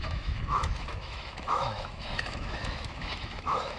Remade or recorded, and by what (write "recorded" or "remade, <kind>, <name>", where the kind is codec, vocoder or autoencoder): remade, autoencoder, DAC-VAE